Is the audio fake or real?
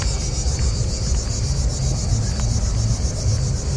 real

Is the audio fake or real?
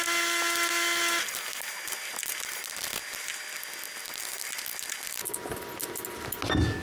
real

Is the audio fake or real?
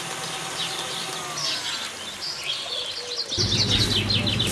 real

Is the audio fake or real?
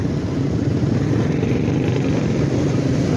real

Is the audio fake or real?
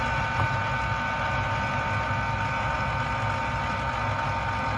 real